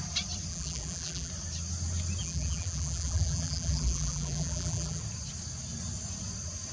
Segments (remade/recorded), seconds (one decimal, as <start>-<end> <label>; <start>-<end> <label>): 0.0-0.5 recorded; 0.5-1.3 remade; 1.3-2.2 recorded; 2.2-5.0 remade; 5.0-6.7 recorded

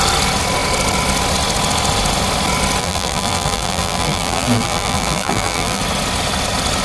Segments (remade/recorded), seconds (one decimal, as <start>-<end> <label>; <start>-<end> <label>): 0.0-2.8 recorded; 2.8-5.8 remade; 5.8-6.8 recorded